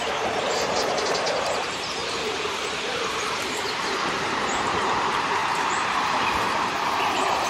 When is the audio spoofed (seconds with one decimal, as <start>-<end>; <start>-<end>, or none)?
0.0-7.5